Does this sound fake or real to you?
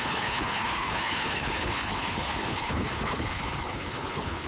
fake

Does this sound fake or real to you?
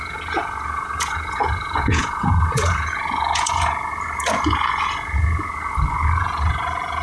fake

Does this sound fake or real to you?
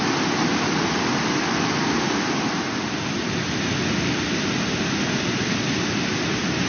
real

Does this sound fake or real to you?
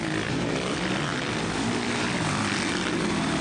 real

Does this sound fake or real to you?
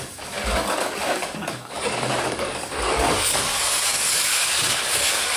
fake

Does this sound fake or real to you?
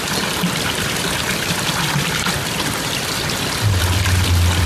fake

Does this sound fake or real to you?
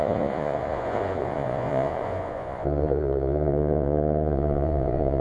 fake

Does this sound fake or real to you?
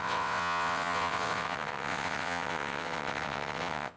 fake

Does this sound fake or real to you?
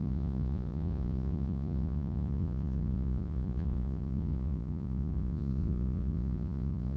fake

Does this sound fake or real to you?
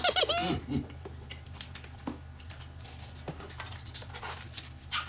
real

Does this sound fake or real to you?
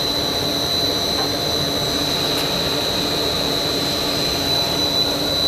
fake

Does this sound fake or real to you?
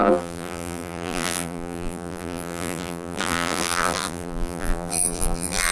fake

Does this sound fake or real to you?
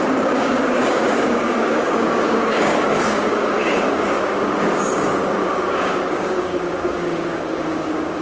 fake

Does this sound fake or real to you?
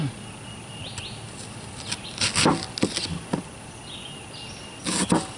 real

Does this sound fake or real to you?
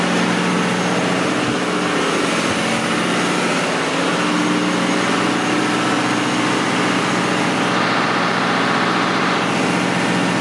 real